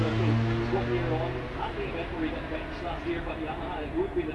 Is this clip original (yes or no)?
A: yes